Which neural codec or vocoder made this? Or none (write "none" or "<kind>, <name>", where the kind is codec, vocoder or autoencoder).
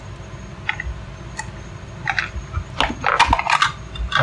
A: none